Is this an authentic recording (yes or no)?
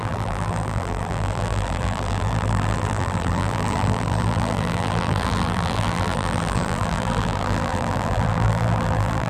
no